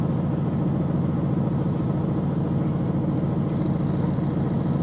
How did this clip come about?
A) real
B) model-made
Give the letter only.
A